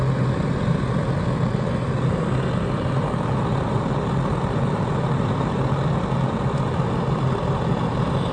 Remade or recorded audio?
recorded